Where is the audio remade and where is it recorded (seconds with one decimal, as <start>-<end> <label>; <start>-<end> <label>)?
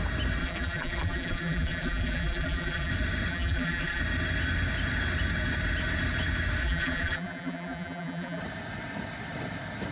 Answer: 0.0-0.4 recorded; 0.4-2.9 remade; 2.9-3.3 recorded; 3.3-4.0 remade; 4.0-6.6 recorded; 6.6-8.4 remade; 8.4-9.9 recorded